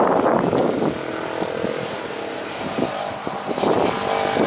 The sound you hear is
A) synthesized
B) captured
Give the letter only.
B